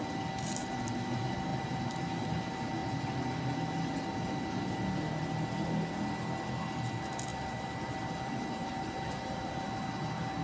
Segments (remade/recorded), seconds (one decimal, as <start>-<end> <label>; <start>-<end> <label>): 0.0-1.5 recorded; 1.5-2.4 remade; 2.4-7.3 recorded; 7.3-9.5 remade; 9.5-10.4 recorded